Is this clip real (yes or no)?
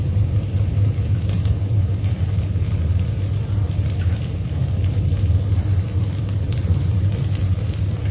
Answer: no